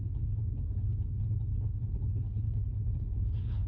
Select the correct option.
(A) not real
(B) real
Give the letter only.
A